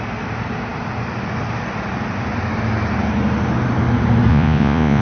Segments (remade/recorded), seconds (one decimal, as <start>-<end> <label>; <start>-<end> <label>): 0.0-4.3 recorded; 4.3-5.0 remade